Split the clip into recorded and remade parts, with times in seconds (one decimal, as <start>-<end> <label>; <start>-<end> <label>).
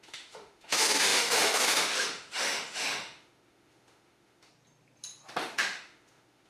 0.0-4.5 remade; 4.5-5.4 recorded; 5.4-6.5 remade